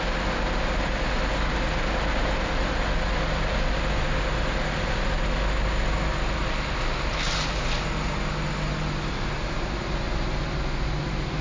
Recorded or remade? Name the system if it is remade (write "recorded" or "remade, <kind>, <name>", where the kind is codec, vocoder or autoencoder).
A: recorded